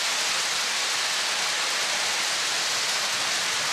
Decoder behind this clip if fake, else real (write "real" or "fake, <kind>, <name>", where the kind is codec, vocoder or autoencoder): real